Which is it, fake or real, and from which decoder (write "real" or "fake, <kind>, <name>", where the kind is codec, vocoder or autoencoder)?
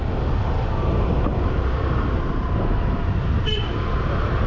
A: real